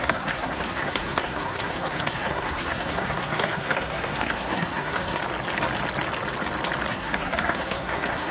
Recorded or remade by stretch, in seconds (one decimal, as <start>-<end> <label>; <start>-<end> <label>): 0.0-5.2 remade; 5.2-6.9 recorded; 6.9-8.3 remade